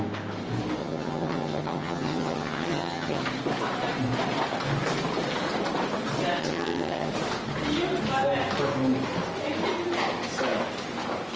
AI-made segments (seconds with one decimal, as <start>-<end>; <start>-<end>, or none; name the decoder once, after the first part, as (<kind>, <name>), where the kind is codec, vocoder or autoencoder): 0.8-3.2 (vocoder, HiFi-GAN); 6.4-7.1